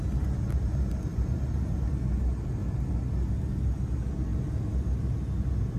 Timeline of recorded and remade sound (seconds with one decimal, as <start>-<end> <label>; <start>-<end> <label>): 0.0-1.1 recorded; 1.1-1.9 remade; 1.9-5.8 recorded